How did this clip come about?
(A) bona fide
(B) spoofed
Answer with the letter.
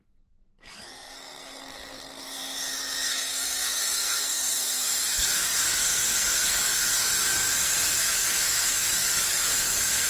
B